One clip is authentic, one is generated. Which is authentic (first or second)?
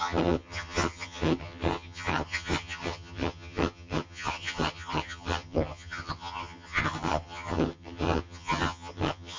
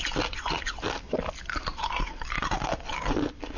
second